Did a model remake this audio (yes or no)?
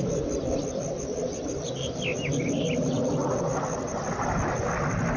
no